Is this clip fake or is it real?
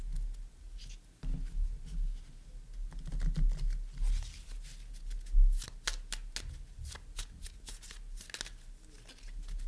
real